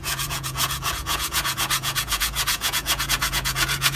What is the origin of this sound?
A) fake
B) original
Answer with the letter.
A